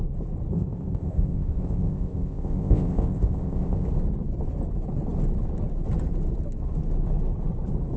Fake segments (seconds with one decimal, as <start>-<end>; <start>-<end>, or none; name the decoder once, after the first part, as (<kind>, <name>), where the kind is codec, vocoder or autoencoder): 0.5-3.9 (codec, ZipCodec)